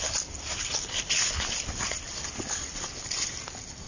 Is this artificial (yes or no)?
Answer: no